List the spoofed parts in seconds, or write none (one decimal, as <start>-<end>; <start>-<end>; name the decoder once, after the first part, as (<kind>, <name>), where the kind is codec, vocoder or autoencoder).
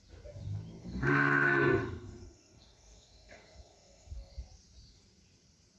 0.8-4.3 (codec, SNAC)